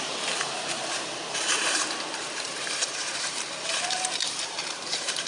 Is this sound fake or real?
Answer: fake